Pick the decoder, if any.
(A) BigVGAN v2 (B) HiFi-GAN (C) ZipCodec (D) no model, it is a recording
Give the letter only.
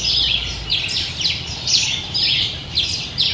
D